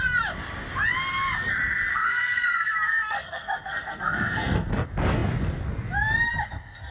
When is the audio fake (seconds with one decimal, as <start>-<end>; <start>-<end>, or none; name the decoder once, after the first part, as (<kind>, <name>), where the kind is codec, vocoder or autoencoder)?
1.9-4.7 (codec, SNAC)